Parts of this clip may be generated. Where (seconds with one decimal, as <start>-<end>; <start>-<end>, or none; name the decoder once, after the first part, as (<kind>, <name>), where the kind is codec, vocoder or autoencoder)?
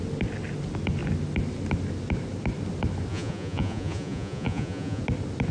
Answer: 3.1-5.0 (vocoder, Vocos)